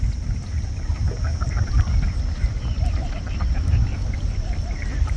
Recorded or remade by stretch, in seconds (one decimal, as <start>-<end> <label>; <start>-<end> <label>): 0.0-0.9 remade; 0.9-1.7 recorded; 1.7-5.2 remade